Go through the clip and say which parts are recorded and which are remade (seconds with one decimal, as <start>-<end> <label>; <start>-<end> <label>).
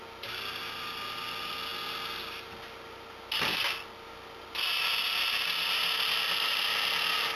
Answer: 0.0-7.4 recorded